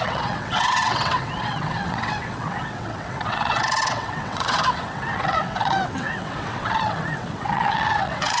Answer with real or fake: fake